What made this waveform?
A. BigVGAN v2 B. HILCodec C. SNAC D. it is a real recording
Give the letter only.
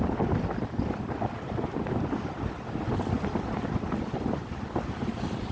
D